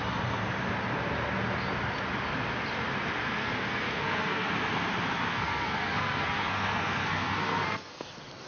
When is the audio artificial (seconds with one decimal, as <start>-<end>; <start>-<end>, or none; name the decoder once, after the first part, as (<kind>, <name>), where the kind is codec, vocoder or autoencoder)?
3.4-4.5 (codec, SNAC); 5.3-8.1